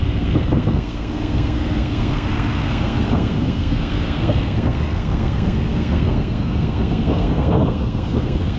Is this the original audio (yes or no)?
no